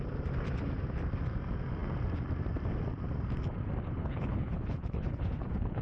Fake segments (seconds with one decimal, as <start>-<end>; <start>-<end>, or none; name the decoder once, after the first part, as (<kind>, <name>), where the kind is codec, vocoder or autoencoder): 4.0-5.8 (codec, HILCodec)